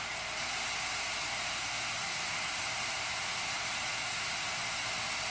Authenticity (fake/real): real